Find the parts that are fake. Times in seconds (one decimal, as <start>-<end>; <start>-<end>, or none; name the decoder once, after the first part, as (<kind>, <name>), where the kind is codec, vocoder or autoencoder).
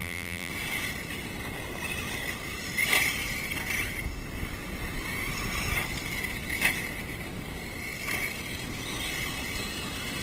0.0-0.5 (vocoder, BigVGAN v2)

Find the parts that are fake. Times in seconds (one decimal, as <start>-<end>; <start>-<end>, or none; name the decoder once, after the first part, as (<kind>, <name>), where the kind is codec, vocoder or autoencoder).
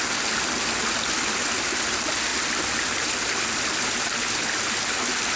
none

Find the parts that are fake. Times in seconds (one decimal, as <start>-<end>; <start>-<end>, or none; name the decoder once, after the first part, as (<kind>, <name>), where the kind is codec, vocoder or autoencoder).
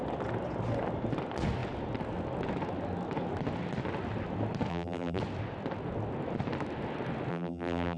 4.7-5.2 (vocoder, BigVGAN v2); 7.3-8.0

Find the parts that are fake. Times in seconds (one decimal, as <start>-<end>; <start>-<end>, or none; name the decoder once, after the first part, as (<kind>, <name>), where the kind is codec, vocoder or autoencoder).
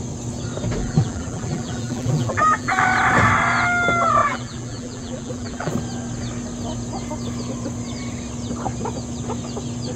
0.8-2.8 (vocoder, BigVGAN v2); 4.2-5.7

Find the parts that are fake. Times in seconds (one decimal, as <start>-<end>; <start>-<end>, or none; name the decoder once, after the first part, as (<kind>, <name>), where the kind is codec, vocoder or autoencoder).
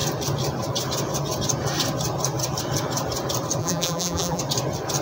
3.6-4.4 (vocoder, BigVGAN v2)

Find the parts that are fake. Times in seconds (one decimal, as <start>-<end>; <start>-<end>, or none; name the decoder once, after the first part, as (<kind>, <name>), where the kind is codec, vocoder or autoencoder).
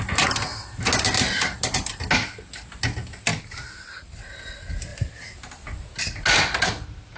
none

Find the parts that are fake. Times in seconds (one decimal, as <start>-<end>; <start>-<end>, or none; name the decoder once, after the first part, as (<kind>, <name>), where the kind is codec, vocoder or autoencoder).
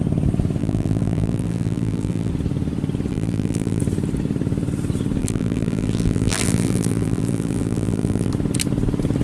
0.6-2.3 (vocoder, BigVGAN v2); 3.1-3.8; 5.2-8.3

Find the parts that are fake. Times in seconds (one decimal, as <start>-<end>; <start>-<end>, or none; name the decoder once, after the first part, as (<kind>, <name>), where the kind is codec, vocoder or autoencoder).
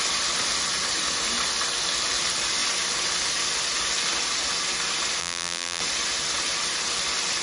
5.2-5.8 (vocoder, BigVGAN v2)